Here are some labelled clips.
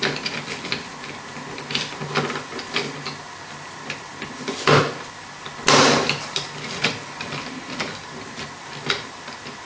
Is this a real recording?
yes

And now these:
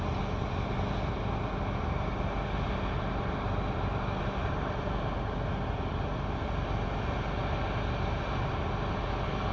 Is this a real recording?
yes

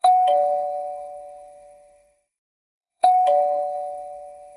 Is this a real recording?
no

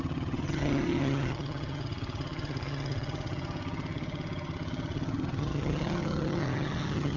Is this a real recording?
no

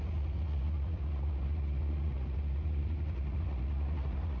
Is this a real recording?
no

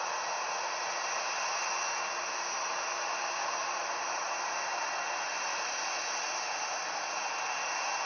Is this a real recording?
yes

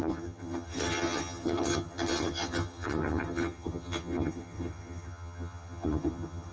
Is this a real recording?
no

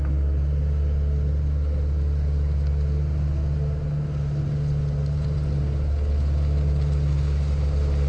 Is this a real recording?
yes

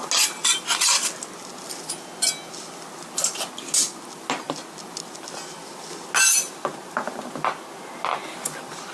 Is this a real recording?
yes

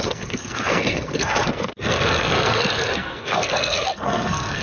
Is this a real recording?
no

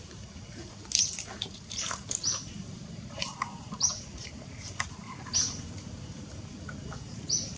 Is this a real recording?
no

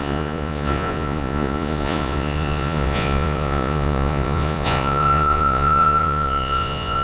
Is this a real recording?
no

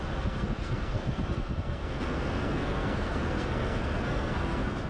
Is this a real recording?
no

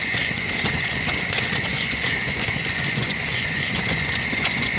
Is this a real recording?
no